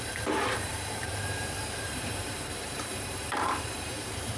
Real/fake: fake